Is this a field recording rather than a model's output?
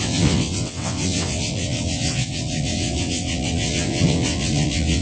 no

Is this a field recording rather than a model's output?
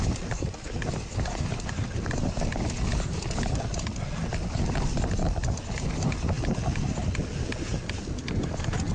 yes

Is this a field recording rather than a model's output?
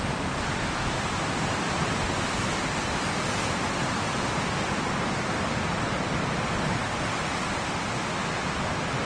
yes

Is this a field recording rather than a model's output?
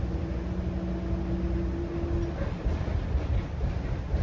yes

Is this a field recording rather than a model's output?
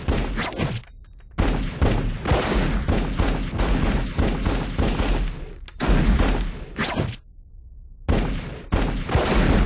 yes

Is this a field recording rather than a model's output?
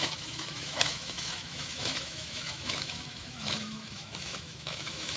no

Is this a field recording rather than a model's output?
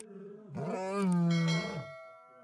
yes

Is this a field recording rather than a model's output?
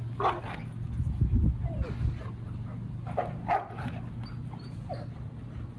yes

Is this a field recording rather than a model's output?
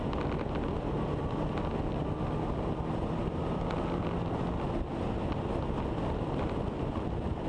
yes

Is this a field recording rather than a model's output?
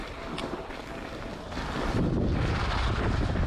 yes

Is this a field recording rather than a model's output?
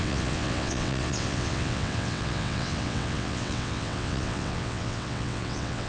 no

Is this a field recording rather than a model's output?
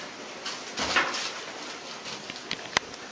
yes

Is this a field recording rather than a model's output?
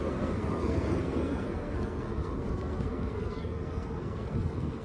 no